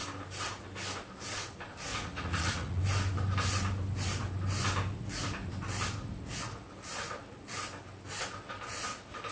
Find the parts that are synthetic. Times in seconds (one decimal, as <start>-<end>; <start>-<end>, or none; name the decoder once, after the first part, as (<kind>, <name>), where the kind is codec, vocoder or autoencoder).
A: 1.9-2.8 (vocoder, Vocos)